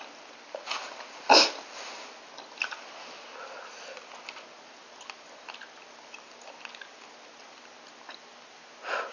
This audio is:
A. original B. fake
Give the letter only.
A